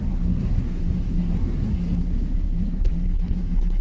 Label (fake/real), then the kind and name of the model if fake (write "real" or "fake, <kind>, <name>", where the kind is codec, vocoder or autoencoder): fake, codec, SNAC